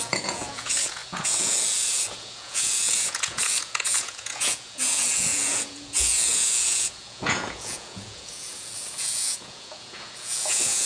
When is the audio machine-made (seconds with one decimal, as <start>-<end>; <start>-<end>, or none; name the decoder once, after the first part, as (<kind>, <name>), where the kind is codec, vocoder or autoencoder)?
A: 0.0-10.9 (vocoder, Vocos)